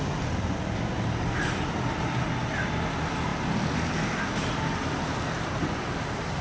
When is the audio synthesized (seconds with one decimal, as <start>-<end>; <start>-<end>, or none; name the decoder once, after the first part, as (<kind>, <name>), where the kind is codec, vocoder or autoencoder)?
none

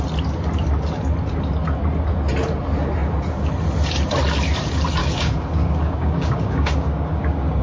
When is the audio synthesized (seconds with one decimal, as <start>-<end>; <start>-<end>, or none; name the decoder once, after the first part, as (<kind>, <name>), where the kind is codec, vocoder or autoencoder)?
5.0-7.6 (codec, DAC)

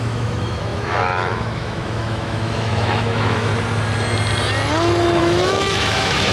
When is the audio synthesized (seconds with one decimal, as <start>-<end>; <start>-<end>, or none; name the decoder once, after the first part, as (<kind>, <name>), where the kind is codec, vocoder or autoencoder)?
0.0-3.5 (autoencoder, DAC-VAE); 5.2-6.3

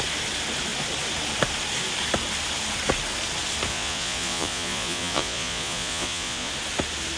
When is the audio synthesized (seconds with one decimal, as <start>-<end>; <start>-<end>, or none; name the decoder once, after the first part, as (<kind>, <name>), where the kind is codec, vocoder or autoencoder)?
3.7-6.5 (vocoder, Vocos)

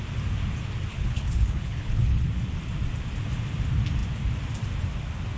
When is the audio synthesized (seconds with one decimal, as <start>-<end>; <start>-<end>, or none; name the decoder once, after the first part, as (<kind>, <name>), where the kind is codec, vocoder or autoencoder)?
0.9-2.3 (codec, HILCodec)

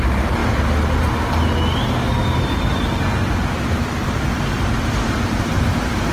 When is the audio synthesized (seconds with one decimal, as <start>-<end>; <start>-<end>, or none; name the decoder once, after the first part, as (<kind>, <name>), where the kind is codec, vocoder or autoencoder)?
4.0-6.1 (vocoder, BigVGAN v2)